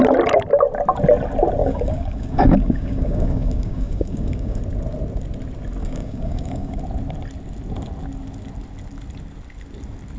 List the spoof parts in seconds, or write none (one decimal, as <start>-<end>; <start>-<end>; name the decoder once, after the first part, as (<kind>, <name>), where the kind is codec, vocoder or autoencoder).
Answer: 1.6-4.6 (codec, DAC); 5.8-6.8